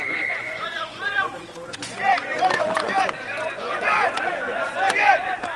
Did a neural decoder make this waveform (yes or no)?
yes